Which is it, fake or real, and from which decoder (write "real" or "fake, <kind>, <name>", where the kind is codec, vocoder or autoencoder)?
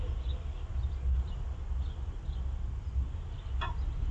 real